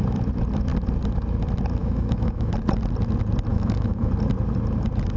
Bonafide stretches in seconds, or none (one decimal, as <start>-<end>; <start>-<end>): 0.0-1.8; 2.5-3.5; 4.1-5.2